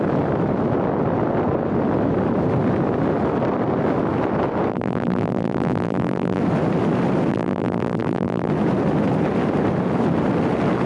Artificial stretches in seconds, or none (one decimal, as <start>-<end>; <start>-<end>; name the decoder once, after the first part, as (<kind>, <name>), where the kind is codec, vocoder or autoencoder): 4.7-6.4 (vocoder, BigVGAN v2); 7.3-8.5